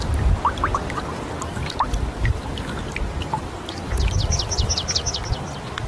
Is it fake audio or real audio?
real